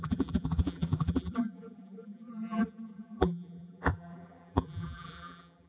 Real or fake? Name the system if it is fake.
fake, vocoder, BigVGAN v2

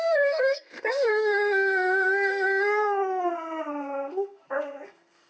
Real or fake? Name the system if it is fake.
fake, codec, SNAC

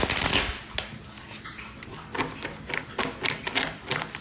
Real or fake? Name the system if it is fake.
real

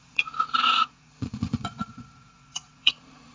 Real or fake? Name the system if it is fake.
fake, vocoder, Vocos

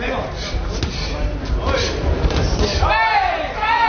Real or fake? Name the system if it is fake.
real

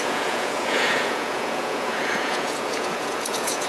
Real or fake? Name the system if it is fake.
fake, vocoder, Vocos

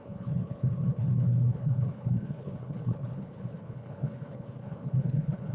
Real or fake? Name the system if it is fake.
fake, codec, HILCodec